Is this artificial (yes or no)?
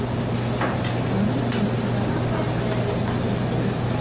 no